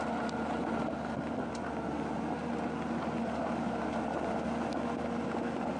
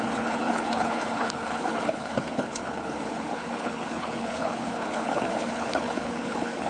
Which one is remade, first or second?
second